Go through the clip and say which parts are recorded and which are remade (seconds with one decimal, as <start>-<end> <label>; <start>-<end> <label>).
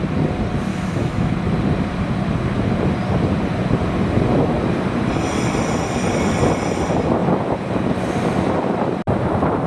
0.0-0.7 recorded; 0.7-1.3 remade; 1.3-9.7 recorded